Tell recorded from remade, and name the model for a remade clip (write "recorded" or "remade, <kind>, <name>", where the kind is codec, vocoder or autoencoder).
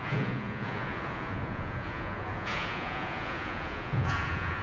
remade, vocoder, Vocos